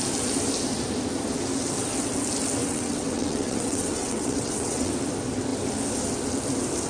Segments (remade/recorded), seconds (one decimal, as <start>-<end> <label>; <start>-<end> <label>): 0.0-2.6 recorded; 2.6-4.9 remade; 4.9-6.9 recorded